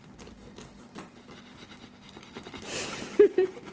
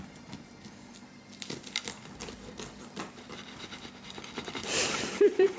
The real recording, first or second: first